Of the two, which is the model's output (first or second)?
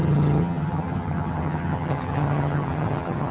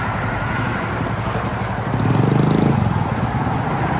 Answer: first